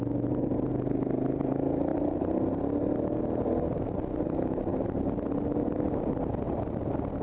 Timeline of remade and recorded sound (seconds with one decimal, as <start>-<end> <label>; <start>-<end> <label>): 0.0-1.9 recorded; 1.9-2.6 remade; 2.6-4.7 recorded; 4.7-5.8 remade; 5.8-7.2 recorded

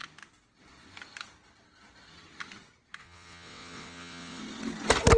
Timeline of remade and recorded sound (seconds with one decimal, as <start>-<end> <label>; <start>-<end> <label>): 0.0-3.0 recorded; 3.0-4.4 remade; 4.4-5.2 recorded

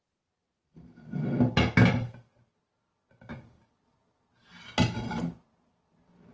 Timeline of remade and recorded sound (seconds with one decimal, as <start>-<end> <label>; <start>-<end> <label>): 0.0-6.3 recorded

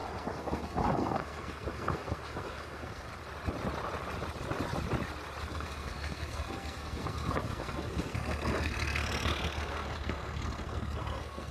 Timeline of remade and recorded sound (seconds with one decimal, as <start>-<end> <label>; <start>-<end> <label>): 0.0-3.1 remade; 3.1-5.5 recorded; 5.5-11.5 remade

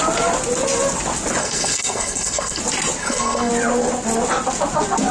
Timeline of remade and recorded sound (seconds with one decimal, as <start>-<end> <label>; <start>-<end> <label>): 0.0-1.4 recorded; 1.4-2.6 remade; 2.6-3.0 recorded; 3.0-3.5 remade; 3.5-5.1 recorded